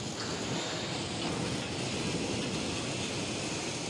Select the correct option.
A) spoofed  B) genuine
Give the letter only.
B